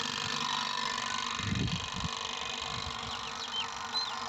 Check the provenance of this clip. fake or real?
real